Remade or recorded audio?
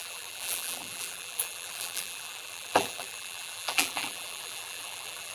remade